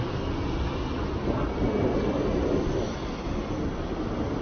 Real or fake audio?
real